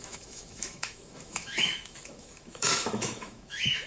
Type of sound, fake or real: fake